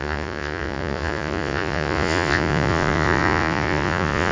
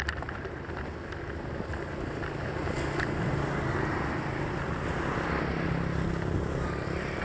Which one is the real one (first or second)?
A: second